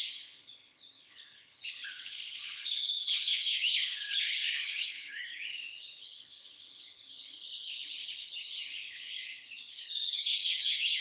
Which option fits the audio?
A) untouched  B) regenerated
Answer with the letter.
B